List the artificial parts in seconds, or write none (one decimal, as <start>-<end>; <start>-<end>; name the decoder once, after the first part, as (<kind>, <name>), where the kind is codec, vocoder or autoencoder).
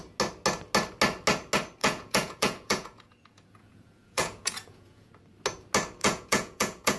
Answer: 1.8-5.1 (vocoder, Vocos); 6.0-7.0